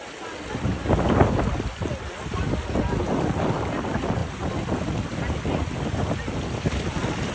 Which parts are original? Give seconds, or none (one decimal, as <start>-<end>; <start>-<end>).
0.0-7.3